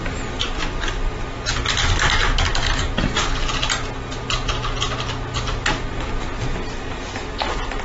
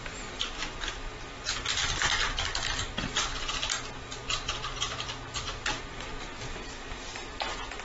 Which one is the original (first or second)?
first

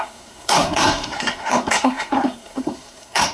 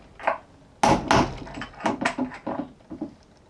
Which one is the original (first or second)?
second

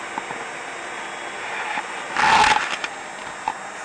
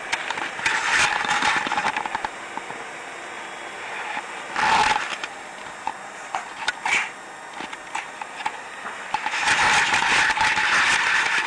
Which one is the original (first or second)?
first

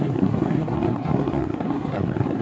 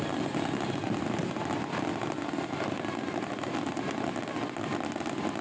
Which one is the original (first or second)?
second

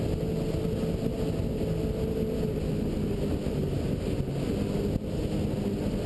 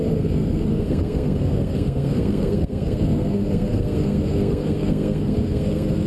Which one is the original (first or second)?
first